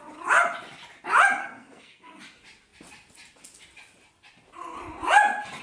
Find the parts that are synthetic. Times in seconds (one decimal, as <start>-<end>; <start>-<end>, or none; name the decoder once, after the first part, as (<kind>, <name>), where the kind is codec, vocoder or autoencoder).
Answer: 1.4-2.2 (codec, SNAC)